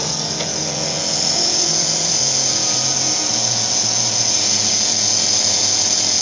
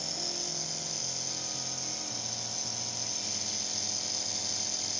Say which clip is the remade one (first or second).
first